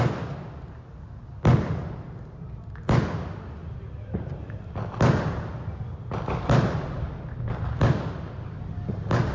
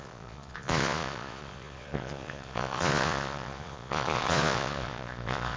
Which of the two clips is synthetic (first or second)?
second